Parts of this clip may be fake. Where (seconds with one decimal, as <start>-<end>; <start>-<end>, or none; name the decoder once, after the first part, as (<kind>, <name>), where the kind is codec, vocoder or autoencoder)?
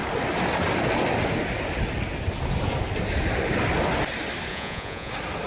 4.5-5.1 (vocoder, Vocos)